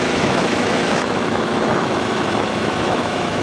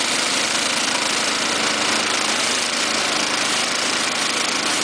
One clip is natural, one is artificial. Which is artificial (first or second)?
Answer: first